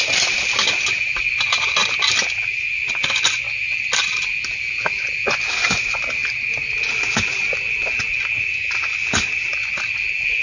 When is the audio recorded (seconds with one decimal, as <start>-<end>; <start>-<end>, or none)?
0.0-10.4

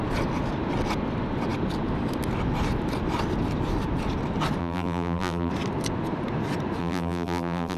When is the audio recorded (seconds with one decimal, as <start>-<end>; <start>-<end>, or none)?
0.0-4.6; 5.5-6.8